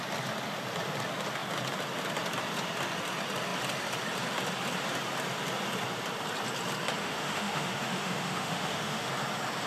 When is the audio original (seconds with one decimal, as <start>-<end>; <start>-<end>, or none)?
0.0-7.0; 9.1-9.7